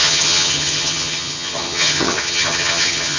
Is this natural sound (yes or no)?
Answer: no